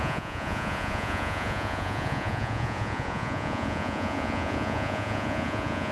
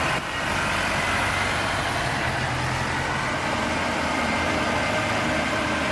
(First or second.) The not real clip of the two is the first